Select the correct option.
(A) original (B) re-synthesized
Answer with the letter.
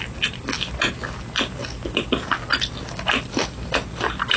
A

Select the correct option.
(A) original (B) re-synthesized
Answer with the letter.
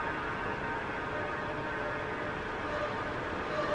A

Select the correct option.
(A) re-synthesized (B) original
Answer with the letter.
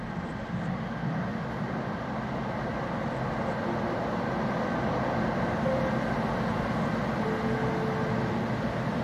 B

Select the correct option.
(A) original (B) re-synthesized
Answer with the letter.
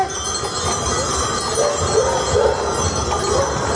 A